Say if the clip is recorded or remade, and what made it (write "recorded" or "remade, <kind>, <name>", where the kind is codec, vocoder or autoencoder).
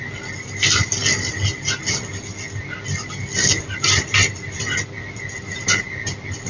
recorded